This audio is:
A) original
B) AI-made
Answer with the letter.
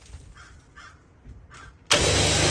A